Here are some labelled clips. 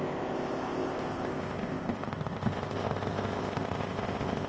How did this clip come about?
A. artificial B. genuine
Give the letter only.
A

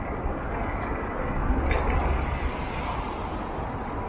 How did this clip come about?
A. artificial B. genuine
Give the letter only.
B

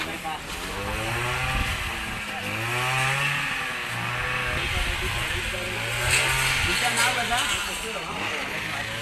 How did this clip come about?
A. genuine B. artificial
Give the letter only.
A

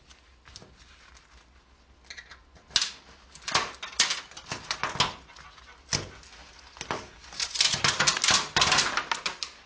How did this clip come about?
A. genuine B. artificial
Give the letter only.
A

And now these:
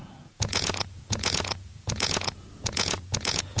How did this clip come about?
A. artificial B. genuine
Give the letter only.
A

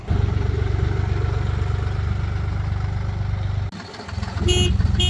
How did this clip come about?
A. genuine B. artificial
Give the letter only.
A